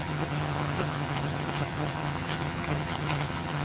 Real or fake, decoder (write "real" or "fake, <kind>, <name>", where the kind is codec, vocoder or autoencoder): fake, vocoder, HiFi-GAN